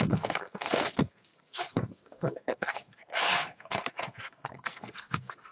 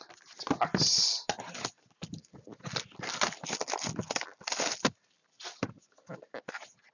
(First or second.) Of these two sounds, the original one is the second